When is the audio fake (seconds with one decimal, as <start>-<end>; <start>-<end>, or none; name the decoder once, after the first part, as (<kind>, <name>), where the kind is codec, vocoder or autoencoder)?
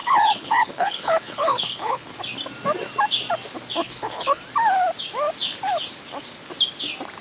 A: 0.0-2.2 (codec, HILCodec); 3.8-4.4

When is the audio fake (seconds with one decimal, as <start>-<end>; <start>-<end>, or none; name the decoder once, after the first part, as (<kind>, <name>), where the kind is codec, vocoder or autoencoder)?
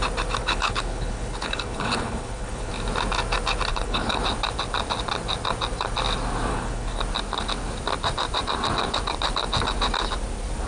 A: 0.4-2.7 (codec, HILCodec); 3.7-4.2; 6.5-7.0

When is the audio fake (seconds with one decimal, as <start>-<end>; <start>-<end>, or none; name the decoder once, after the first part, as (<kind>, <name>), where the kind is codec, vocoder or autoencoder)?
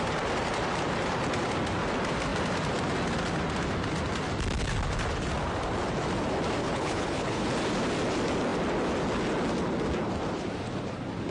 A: 6.6-7.5 (codec, HILCodec)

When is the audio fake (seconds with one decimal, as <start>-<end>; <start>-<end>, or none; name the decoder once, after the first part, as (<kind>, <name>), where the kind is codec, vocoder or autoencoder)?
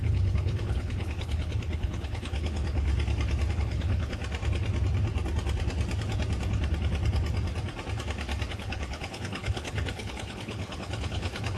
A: 0.0-2.9 (codec, HILCodec); 3.5-4.2; 8.5-11.6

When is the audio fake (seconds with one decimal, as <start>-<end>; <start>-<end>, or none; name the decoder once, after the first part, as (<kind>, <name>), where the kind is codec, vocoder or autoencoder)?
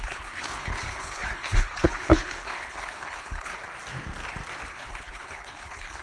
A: 0.0-3.5 (codec, HILCodec); 4.7-6.0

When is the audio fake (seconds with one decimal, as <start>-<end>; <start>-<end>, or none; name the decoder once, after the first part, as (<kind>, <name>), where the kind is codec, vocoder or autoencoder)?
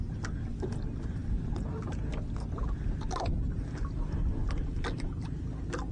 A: none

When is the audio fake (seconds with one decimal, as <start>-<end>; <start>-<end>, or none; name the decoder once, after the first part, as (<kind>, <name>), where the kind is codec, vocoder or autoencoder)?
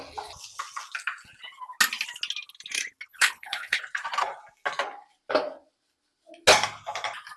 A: 3.1-3.8 (codec, HILCodec)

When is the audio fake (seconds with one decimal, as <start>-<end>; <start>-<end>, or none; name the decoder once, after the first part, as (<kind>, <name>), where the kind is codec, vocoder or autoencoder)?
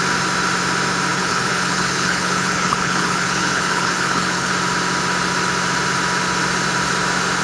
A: 1.1-4.5 (codec, HILCodec)